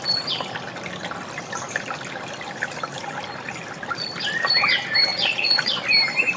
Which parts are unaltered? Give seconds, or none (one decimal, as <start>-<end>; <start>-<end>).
0.0-5.1; 5.8-6.4